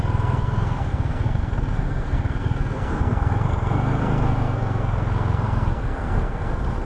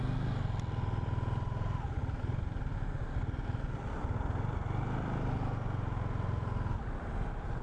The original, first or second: second